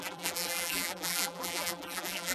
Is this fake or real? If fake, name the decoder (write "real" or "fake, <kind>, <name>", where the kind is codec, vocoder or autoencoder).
fake, vocoder, BigVGAN v2